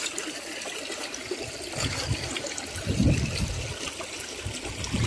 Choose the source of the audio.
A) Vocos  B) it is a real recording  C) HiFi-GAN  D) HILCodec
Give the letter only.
B